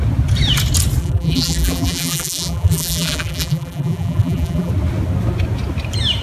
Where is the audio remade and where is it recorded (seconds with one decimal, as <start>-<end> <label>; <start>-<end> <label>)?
0.0-1.0 recorded; 1.0-4.7 remade; 4.7-6.2 recorded